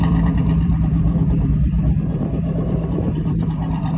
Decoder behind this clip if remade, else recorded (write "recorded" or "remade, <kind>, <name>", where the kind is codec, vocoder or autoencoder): remade, vocoder, BigVGAN v2